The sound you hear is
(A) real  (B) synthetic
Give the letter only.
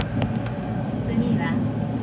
A